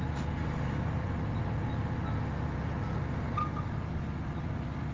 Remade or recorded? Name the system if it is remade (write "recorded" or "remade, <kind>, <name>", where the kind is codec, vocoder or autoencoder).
recorded